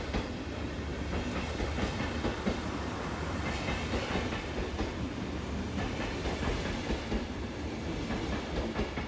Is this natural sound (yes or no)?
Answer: yes